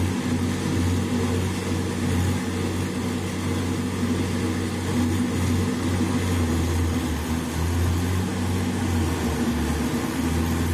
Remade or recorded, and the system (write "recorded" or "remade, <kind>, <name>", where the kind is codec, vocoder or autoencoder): recorded